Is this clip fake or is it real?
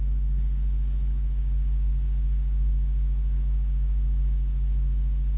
fake